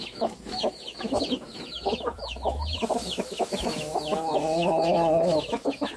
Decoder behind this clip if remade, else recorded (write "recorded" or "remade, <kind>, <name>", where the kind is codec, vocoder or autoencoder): remade, autoencoder, DAC-VAE